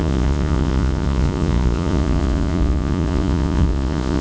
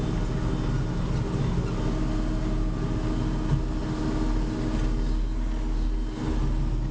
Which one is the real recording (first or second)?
second